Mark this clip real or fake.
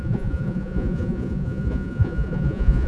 fake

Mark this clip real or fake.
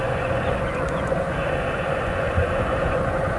fake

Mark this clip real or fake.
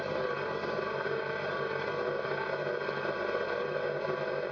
real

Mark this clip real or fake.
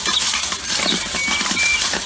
real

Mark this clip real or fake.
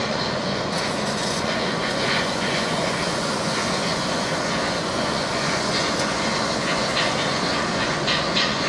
fake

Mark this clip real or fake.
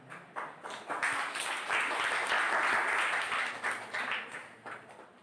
real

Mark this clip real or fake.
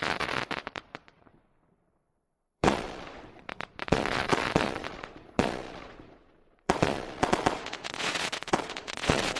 fake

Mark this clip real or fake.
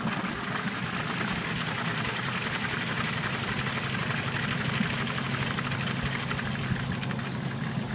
real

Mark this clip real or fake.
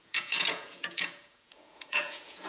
fake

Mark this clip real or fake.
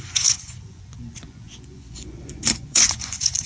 fake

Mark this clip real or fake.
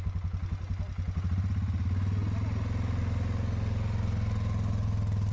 real